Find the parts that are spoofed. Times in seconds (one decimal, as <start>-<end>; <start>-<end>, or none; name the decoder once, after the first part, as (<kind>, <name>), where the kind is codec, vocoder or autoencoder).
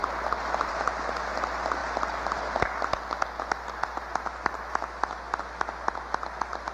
none